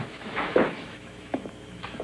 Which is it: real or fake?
fake